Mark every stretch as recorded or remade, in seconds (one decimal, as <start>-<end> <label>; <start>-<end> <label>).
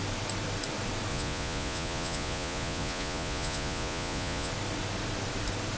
0.0-1.1 recorded; 1.1-4.5 remade; 4.5-5.8 recorded